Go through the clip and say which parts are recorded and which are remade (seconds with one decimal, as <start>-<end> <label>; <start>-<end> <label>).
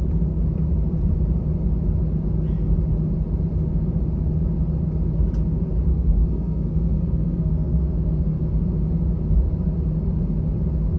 0.0-5.9 recorded; 5.9-8.4 remade; 8.4-11.0 recorded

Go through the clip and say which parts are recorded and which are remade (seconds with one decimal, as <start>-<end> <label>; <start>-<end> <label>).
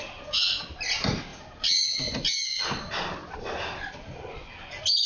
0.0-5.1 recorded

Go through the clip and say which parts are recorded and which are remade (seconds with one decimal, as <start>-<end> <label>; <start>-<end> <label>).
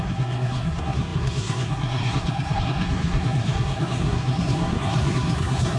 0.0-5.8 remade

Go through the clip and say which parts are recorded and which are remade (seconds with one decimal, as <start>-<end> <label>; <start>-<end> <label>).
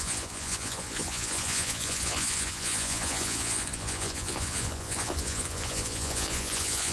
0.0-6.9 remade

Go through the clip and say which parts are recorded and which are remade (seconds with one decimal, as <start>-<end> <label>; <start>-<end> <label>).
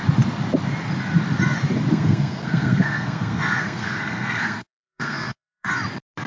0.0-1.9 recorded; 1.9-5.7 remade; 5.7-6.3 recorded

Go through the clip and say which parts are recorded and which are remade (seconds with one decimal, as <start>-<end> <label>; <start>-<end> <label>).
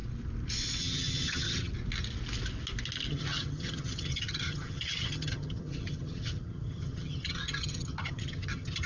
0.0-0.8 recorded; 0.8-1.7 remade; 1.7-3.1 recorded; 3.1-8.9 remade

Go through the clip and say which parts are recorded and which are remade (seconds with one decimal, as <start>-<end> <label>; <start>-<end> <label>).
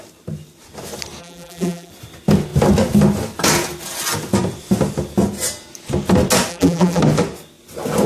0.0-1.2 recorded; 1.2-1.9 remade; 1.9-6.5 recorded; 6.5-7.0 remade; 7.0-8.1 recorded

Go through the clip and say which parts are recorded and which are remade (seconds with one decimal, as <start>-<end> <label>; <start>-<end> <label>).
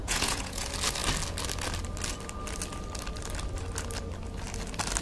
0.0-0.6 remade; 0.6-5.0 recorded